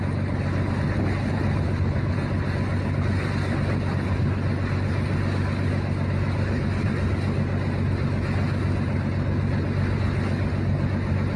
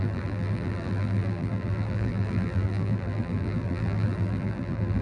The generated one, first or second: second